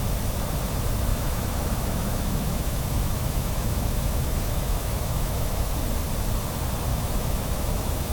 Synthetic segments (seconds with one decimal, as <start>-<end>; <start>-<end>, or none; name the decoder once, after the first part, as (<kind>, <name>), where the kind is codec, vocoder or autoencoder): 1.1-5.7 (autoencoder, DAC-VAE); 6.9-8.1